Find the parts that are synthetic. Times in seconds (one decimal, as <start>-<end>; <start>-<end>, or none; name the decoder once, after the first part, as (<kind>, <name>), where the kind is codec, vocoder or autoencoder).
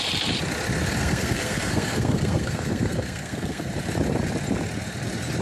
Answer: 1.0-3.7 (codec, SNAC)